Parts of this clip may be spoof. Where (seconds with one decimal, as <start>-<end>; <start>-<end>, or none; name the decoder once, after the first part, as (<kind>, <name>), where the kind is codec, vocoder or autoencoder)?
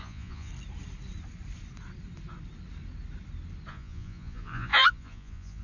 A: 0.0-0.5 (vocoder, Vocos); 3.7-5.6